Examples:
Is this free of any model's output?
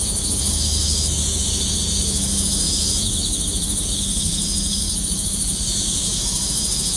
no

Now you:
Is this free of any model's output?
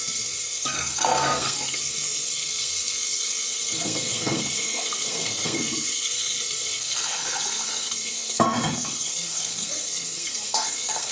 no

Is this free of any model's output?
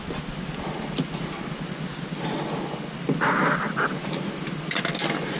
yes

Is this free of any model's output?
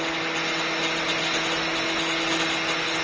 yes